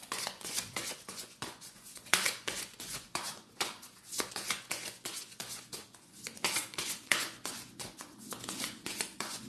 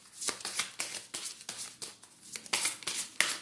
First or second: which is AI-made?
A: first